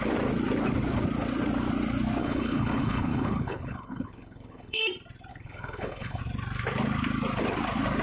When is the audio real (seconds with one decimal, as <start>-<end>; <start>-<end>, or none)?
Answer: 0.0-2.2; 4.8-5.3; 6.2-8.0